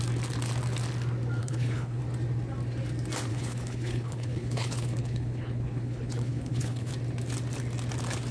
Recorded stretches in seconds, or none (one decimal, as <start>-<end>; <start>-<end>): 0.0-1.4; 2.0-3.3; 6.9-8.3

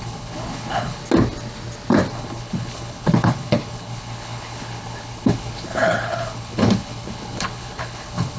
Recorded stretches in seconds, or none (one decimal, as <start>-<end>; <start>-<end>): 1.0-2.1

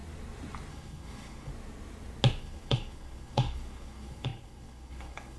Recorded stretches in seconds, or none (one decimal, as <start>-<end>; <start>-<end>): 0.0-0.7; 1.5-2.4

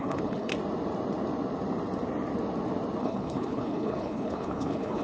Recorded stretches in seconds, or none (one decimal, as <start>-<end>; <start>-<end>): 0.5-3.0

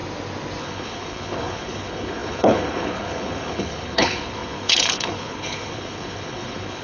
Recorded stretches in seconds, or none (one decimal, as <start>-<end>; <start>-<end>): 0.0-0.6

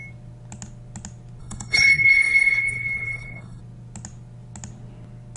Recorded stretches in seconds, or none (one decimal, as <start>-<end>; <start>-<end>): 0.0-1.4; 3.6-5.4

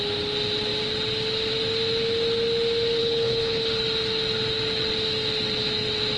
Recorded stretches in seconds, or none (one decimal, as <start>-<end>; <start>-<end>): 0.0-3.0; 3.6-6.2

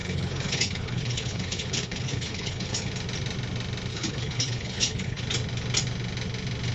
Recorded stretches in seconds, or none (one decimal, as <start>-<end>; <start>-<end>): 2.9-3.9; 5.2-6.7